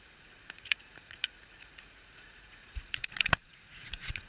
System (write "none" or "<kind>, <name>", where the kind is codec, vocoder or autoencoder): vocoder, Vocos